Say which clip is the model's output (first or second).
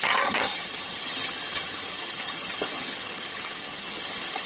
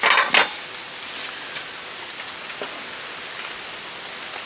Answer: first